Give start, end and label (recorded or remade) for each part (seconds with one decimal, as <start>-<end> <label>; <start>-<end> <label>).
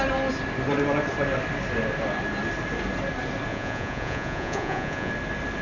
0.0-3.5 recorded; 3.5-5.1 remade; 5.1-5.6 recorded